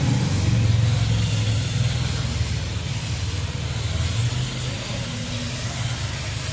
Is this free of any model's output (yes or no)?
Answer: yes